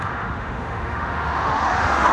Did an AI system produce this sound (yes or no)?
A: yes